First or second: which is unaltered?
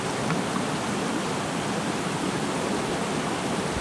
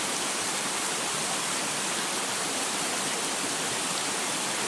first